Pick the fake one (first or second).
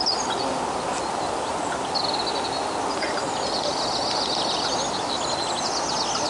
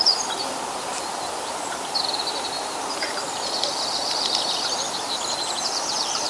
second